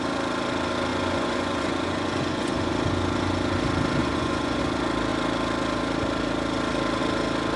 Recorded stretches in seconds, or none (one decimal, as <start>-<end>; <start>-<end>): 0.0-0.9; 2.7-4.0; 4.6-7.6